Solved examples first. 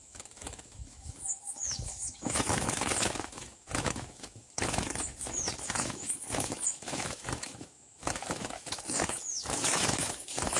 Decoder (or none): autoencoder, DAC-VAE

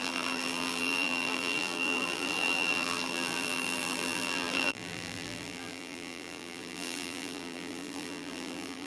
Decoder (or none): vocoder, BigVGAN v2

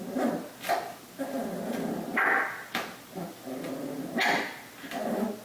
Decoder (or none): none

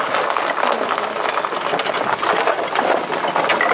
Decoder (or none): none